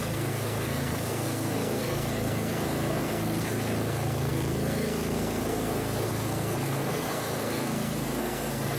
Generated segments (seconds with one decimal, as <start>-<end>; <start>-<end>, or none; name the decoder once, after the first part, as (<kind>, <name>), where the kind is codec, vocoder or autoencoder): 0.0-8.8 (codec, SNAC)